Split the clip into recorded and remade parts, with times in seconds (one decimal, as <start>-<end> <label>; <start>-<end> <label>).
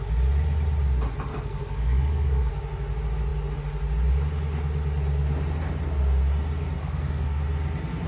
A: 0.0-1.3 recorded; 1.3-2.5 remade; 2.5-6.8 recorded; 6.8-7.4 remade; 7.4-8.1 recorded